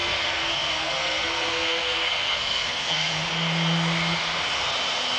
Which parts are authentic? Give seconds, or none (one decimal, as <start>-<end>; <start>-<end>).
3.1-5.2